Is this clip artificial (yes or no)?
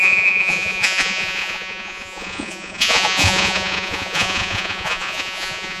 yes